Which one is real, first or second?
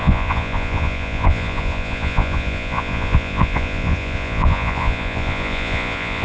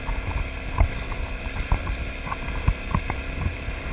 second